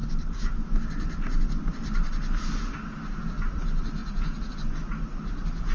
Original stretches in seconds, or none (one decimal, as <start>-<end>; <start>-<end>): 0.0-4.0; 4.5-5.7